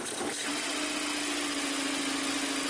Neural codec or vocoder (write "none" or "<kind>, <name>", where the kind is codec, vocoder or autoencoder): none